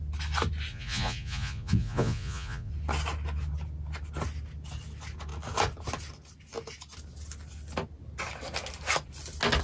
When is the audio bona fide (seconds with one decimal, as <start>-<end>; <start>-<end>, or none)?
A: 0.0-0.7; 2.7-9.6